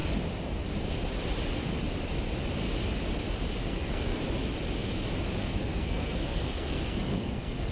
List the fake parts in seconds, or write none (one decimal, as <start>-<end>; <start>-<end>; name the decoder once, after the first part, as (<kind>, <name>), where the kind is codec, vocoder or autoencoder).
3.6-4.2 (codec, SNAC); 5.4-7.7